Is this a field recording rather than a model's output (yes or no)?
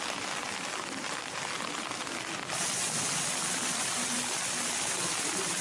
yes